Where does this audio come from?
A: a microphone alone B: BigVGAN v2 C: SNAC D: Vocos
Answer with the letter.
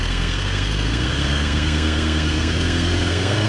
C